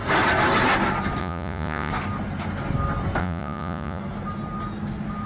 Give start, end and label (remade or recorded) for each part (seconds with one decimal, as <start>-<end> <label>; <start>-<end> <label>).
0.0-1.2 recorded; 1.2-1.9 remade; 1.9-3.2 recorded; 3.2-4.0 remade; 4.0-5.3 recorded